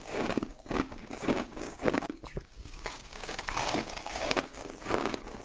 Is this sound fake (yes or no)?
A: yes